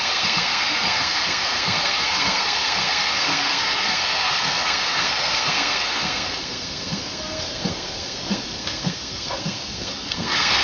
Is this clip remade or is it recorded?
remade